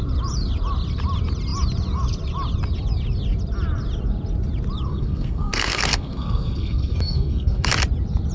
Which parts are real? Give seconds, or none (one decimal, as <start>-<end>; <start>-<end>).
0.0-4.9; 7.7-8.3